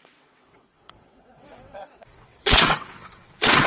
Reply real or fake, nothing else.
fake